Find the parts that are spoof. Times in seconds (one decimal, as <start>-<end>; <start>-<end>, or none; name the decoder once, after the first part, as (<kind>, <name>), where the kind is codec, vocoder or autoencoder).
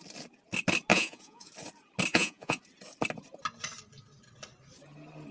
0.9-1.5 (vocoder, Vocos); 2.1-2.6